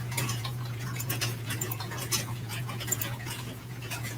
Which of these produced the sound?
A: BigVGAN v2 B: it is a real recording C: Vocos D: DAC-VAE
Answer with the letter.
C